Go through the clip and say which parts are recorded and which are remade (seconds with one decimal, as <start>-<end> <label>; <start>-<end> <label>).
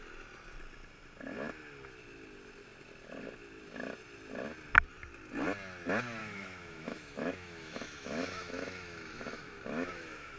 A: 0.0-6.2 recorded; 6.2-10.4 remade